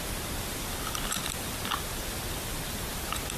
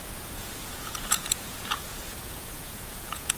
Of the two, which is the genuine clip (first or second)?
first